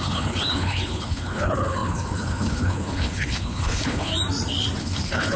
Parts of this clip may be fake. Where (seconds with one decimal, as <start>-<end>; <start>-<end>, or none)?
0.0-4.1; 4.8-5.4